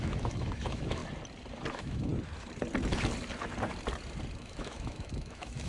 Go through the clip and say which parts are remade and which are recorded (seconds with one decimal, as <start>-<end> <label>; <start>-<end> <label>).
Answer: 0.0-1.0 remade; 1.0-1.7 recorded; 1.7-2.1 remade; 2.1-4.4 recorded; 4.4-5.7 remade